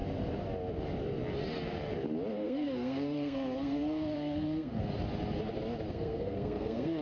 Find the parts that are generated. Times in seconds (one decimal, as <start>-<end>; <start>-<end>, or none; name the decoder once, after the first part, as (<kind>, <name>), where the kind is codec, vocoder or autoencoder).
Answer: 2.3-4.8 (codec, SNAC); 5.9-7.0